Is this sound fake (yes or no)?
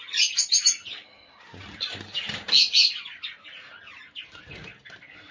no